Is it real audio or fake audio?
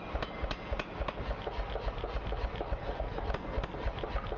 real